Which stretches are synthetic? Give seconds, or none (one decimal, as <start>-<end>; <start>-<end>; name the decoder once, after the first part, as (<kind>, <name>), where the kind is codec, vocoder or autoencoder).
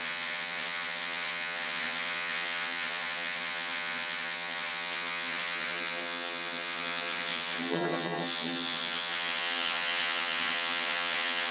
0.0-11.5 (vocoder, HiFi-GAN)